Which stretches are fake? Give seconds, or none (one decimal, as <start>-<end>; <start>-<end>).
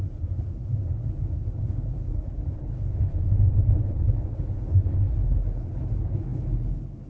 0.0-7.1